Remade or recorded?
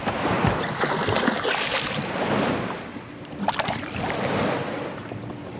recorded